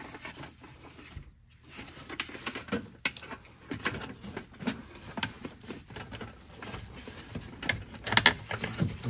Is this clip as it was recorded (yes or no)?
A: yes